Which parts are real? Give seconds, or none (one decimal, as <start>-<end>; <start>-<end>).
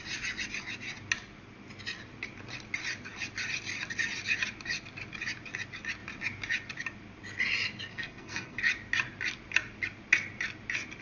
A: 0.0-7.9; 8.6-11.0